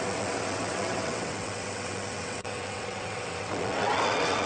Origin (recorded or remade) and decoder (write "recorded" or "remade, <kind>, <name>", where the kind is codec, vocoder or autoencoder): remade, vocoder, WaveNeXt